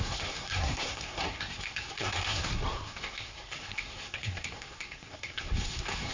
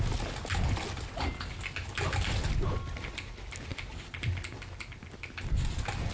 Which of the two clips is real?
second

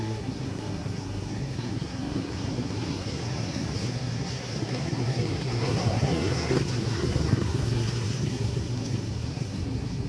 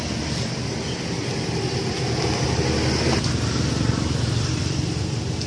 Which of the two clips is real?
second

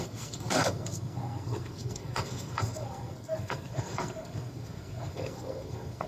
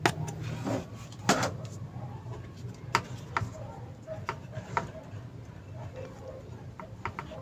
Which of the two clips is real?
second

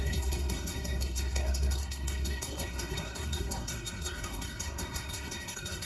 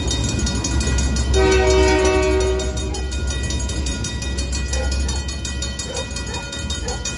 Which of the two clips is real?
second